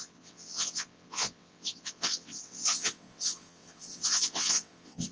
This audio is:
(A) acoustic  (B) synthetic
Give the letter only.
B